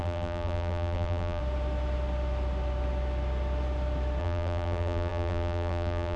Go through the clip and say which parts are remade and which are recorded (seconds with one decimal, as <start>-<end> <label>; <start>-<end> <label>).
0.0-1.4 remade; 1.4-4.2 recorded; 4.2-6.2 remade